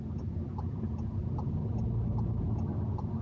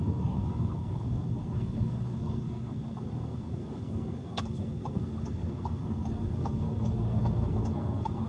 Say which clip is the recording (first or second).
first